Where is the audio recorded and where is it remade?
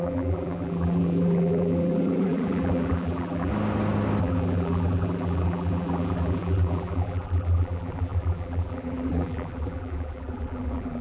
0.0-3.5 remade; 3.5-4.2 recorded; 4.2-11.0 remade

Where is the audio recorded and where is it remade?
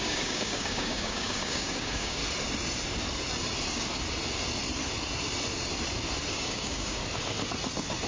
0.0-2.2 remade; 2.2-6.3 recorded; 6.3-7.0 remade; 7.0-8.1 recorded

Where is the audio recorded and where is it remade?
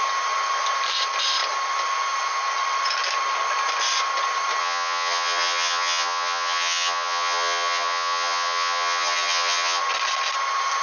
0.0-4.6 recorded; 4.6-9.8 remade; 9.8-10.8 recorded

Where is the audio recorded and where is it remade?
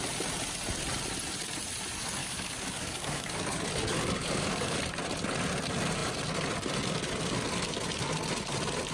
0.0-2.2 recorded; 2.2-3.6 remade; 3.6-4.2 recorded; 4.2-4.8 remade; 4.8-8.9 recorded